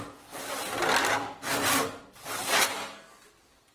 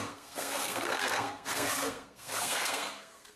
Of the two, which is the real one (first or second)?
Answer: first